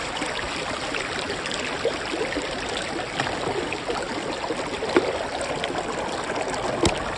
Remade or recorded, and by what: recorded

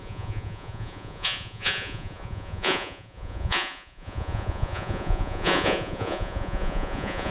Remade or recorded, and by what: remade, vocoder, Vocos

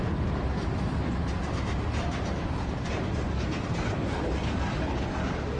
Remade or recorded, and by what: recorded